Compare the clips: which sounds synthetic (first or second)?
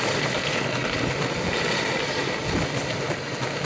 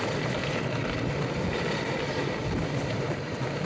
second